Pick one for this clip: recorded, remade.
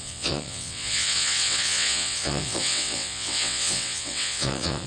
remade